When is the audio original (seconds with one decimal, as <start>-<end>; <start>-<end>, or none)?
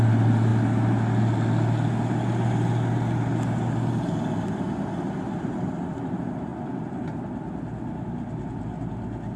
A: 0.0-9.4